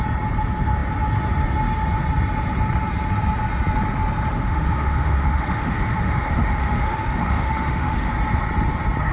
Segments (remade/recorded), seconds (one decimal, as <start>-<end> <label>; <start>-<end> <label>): 0.0-4.3 recorded; 4.3-8.1 remade; 8.1-9.1 recorded